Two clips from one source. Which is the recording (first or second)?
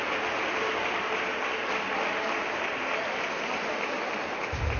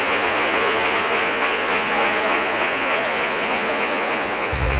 first